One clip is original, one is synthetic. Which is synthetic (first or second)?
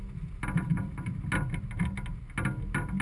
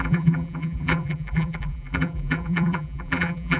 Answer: second